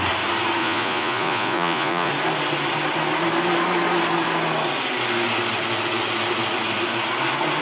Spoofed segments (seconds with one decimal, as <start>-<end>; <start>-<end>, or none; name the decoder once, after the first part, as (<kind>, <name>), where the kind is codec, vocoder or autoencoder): 0.6-2.1 (vocoder, Vocos)